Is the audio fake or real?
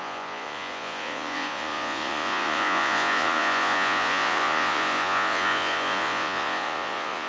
fake